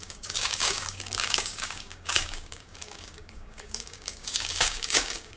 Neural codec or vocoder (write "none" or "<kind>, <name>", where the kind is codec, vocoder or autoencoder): codec, DAC